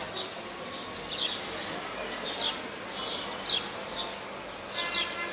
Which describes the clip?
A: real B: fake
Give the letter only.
A